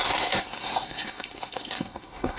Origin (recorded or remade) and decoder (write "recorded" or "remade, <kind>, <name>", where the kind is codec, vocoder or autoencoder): remade, codec, SNAC